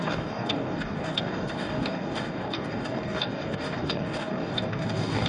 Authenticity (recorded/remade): remade